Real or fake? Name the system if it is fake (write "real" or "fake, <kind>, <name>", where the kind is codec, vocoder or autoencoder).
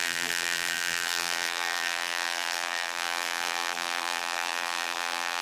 fake, vocoder, BigVGAN v2